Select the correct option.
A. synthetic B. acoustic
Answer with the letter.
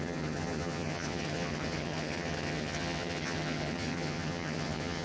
A